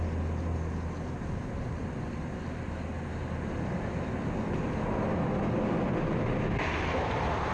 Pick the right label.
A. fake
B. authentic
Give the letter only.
B